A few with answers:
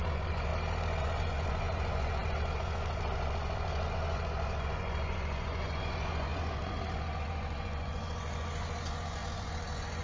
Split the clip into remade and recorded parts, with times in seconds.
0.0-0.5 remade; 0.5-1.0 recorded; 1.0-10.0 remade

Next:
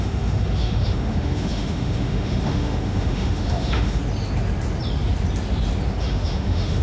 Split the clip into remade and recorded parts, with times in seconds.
0.0-4.0 remade; 4.0-6.0 recorded; 6.0-6.8 remade